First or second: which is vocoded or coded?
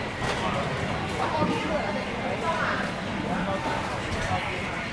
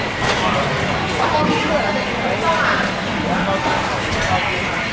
first